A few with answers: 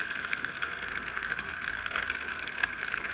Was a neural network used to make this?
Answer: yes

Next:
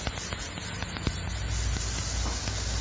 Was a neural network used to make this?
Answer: no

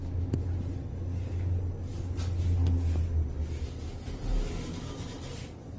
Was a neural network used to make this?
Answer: no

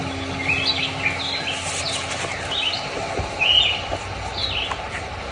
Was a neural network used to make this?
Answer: no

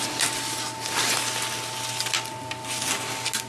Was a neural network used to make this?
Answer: no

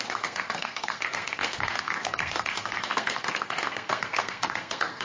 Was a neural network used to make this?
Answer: yes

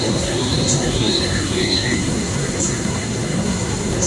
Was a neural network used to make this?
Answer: yes